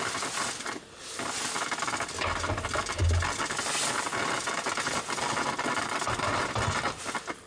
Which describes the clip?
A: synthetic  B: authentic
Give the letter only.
B